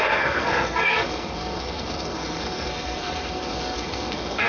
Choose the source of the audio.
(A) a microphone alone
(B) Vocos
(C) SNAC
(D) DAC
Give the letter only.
C